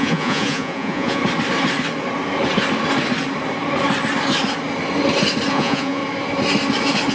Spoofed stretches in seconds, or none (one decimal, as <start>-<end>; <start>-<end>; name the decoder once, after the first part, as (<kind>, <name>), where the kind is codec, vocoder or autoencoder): 0.0-1.2 (vocoder, Vocos); 5.5-6.0